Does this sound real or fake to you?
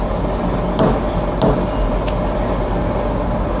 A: real